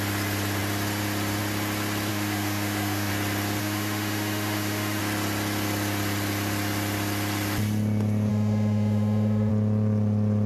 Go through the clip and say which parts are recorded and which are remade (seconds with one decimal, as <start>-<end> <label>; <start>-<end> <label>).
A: 0.0-2.1 recorded; 2.1-3.1 remade; 3.1-3.6 recorded; 3.6-5.0 remade; 5.0-8.3 recorded; 8.3-9.5 remade; 9.5-10.5 recorded